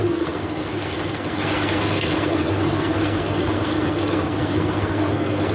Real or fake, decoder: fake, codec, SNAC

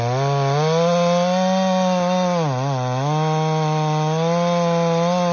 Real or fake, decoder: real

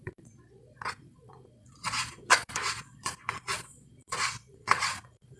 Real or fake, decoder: fake, vocoder, Vocos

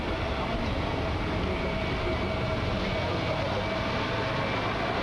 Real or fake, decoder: real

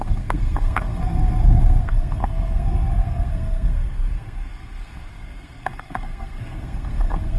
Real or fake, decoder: fake, codec, SNAC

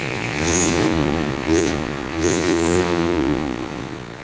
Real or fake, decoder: fake, vocoder, Vocos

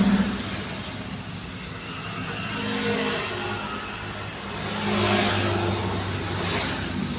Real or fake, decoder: real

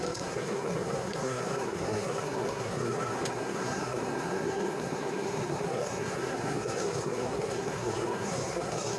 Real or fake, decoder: fake, codec, SNAC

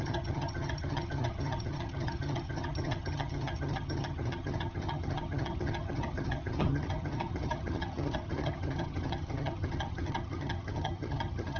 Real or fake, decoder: fake, vocoder, HiFi-GAN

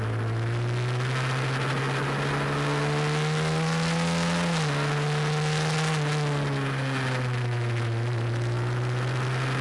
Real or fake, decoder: real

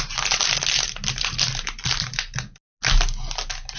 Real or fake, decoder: real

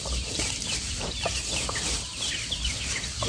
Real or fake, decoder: fake, vocoder, BigVGAN v2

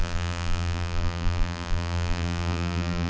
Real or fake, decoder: fake, vocoder, BigVGAN v2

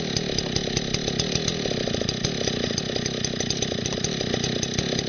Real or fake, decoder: real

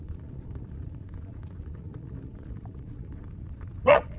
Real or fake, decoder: fake, vocoder, Vocos